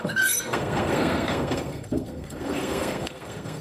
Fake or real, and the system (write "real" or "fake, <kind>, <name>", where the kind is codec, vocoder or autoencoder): fake, codec, SNAC